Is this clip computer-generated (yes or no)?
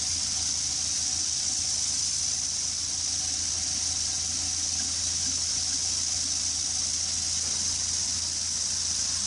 no